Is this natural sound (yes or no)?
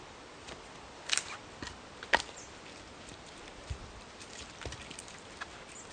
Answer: yes